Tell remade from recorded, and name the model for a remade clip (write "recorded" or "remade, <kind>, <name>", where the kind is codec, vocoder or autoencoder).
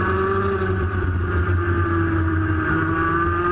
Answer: recorded